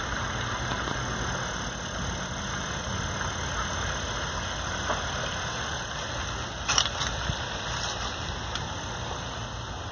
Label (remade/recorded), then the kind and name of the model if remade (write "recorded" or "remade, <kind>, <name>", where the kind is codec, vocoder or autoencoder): recorded